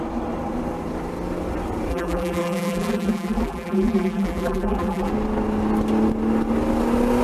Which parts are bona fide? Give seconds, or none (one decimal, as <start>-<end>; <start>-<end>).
0.0-1.9; 5.1-7.2